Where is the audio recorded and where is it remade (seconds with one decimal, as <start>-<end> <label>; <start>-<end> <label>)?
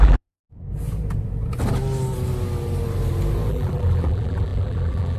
0.0-0.4 remade; 0.4-3.5 recorded; 3.5-5.2 remade